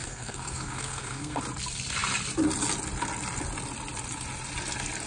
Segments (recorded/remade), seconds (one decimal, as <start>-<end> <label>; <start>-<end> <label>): 0.0-1.4 remade; 1.4-5.1 recorded